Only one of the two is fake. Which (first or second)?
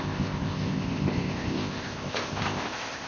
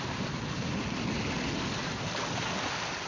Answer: first